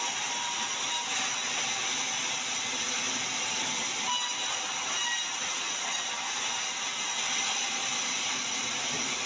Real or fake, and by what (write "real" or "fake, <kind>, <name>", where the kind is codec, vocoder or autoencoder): real